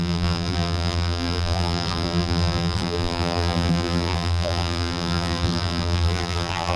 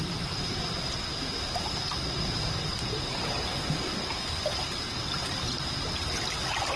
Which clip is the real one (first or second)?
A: second